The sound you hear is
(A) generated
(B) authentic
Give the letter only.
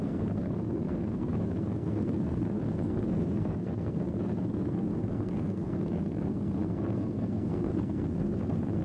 A